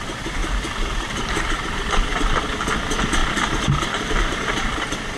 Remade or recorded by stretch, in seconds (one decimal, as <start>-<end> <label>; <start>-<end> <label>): 0.0-0.4 recorded; 0.4-2.5 remade; 2.5-3.2 recorded; 3.2-4.4 remade; 4.4-5.2 recorded